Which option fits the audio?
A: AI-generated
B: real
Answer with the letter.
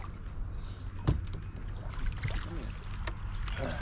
B